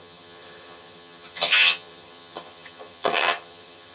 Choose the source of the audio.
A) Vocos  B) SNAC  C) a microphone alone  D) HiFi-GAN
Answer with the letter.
D